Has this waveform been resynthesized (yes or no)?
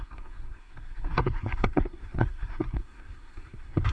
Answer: yes